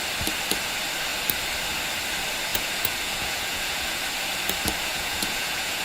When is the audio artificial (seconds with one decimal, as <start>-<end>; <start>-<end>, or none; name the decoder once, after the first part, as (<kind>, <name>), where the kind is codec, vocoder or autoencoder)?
2.5-4.0 (vocoder, Vocos); 4.9-5.8